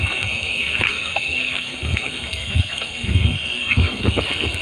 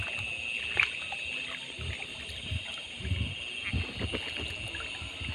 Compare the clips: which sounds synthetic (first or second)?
first